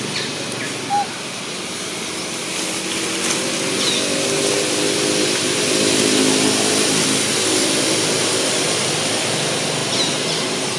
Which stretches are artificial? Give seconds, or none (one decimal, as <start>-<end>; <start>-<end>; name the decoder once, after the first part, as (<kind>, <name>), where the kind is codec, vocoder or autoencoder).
9.8-10.8 (vocoder, BigVGAN v2)